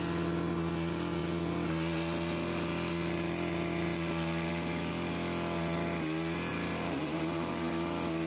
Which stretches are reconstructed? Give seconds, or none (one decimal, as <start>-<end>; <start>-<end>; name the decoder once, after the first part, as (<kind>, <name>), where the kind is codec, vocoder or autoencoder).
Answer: 6.5-7.5 (vocoder, BigVGAN v2)